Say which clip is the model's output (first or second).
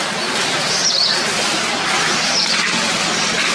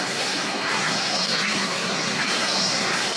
second